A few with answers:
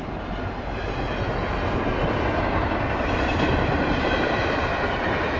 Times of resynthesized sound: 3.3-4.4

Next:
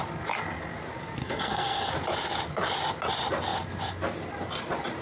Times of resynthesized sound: 1.2-1.9

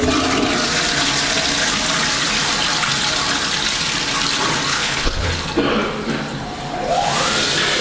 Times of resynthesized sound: 4.7-5.3